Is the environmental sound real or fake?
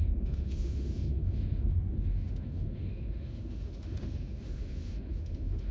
fake